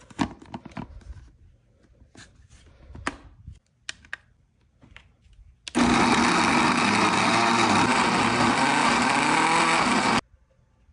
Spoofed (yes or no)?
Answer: no